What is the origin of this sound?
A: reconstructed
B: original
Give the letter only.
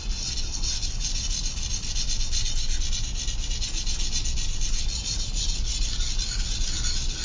B